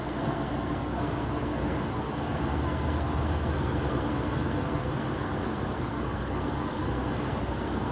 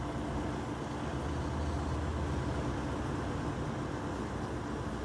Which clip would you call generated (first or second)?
first